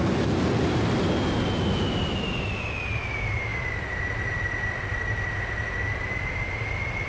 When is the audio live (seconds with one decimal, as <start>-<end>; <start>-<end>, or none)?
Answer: 0.0-7.1